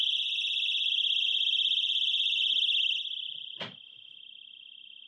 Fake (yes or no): no